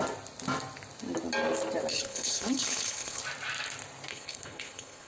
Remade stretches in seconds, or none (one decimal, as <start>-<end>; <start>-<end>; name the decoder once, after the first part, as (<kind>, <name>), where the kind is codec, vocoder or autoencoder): 1.9-3.2 (codec, HILCodec); 4.1-5.1

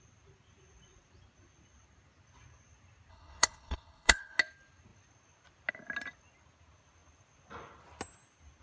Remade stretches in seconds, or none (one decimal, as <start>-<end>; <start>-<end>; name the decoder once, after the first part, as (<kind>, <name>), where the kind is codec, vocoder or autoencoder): 3.1-4.4 (codec, HILCodec)

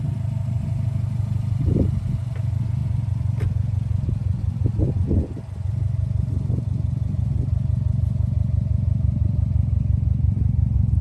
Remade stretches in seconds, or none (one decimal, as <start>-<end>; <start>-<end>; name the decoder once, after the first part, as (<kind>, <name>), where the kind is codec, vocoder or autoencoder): none

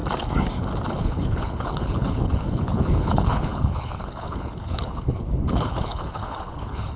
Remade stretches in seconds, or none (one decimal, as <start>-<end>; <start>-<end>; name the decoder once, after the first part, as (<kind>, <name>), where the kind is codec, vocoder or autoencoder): 0.9-7.0 (codec, HILCodec)

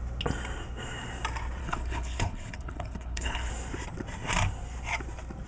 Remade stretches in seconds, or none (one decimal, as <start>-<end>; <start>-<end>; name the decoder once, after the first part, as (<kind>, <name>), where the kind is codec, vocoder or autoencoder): 1.6-3.5 (codec, HILCodec)

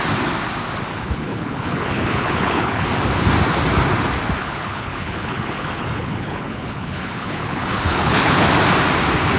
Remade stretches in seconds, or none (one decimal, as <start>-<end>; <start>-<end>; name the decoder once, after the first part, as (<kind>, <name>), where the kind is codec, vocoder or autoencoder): 0.9-2.9 (codec, HILCodec); 4.4-8.5

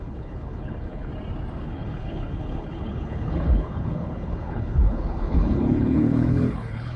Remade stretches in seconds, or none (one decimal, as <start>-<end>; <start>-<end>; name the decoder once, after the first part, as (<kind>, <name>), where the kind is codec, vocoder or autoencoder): 0.0-1.1 (codec, HILCodec); 1.6-7.0

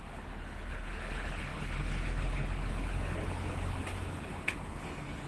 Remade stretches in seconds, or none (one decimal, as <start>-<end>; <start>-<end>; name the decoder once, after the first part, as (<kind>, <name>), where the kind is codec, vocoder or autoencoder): 0.0-5.3 (codec, HILCodec)